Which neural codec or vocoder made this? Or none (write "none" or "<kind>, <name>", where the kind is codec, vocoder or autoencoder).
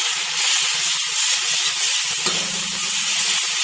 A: none